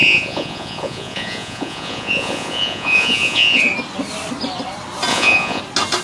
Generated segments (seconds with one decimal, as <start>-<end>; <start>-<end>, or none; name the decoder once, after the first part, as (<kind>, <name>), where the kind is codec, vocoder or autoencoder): 0.0-3.6 (vocoder, Vocos); 5.1-5.6